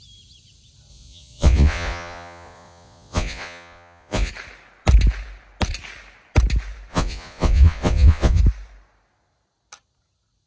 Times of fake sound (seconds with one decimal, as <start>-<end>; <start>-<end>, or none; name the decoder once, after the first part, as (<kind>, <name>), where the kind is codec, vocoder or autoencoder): 0.9-4.3 (vocoder, Vocos); 6.9-8.4